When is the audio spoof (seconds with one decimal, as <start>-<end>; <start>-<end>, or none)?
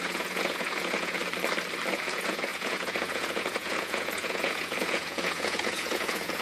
0.0-1.2; 1.9-6.4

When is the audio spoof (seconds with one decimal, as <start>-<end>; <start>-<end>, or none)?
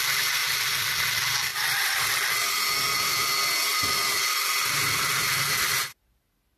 0.4-1.0; 1.5-2.1; 3.7-5.4